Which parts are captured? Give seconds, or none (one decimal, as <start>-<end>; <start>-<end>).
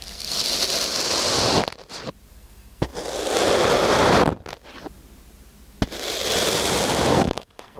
0.4-2.3; 2.9-7.1